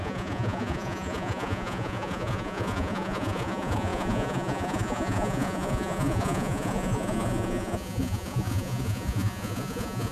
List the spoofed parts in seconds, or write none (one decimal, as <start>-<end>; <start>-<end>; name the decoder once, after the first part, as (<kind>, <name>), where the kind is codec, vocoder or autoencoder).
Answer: 0.0-10.1 (vocoder, Vocos)